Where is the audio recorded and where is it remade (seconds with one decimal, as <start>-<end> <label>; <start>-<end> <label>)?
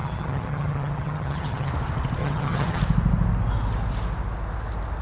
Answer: 0.0-1.7 remade; 1.7-2.2 recorded; 2.2-2.8 remade; 2.8-5.0 recorded